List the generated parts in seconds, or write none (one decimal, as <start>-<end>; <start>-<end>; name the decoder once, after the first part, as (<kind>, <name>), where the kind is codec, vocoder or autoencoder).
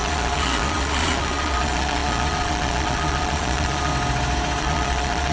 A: 0.0-3.9 (vocoder, Vocos); 4.6-5.3